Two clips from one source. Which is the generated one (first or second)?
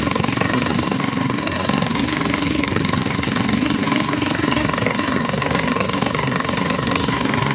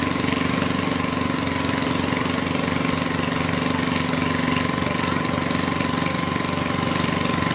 first